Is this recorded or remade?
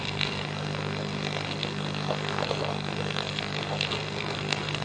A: remade